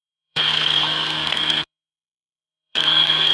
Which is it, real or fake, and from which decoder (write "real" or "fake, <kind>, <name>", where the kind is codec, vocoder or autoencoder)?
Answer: fake, codec, SNAC